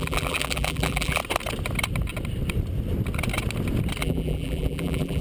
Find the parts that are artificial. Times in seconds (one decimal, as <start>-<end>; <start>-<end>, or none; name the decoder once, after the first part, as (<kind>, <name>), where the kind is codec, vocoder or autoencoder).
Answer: 0.0-1.2 (vocoder, BigVGAN v2); 4.0-5.2